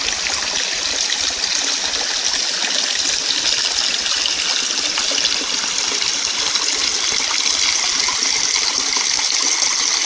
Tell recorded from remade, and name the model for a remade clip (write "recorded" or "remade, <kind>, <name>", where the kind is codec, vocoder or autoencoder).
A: recorded